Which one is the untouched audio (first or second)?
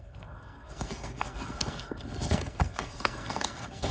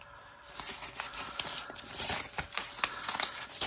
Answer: second